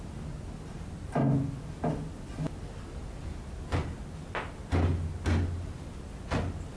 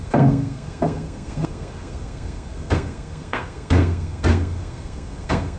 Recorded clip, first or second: first